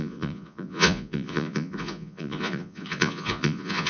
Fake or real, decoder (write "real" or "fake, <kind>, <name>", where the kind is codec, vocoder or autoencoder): fake, vocoder, Vocos